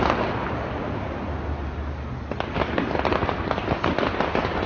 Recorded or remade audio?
recorded